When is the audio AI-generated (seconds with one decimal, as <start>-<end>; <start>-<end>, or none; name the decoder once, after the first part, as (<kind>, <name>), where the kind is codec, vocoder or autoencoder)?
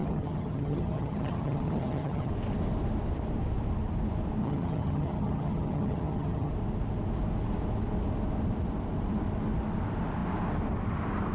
0.0-2.3 (vocoder, HiFi-GAN); 4.4-6.5